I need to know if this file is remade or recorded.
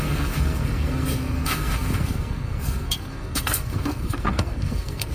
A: remade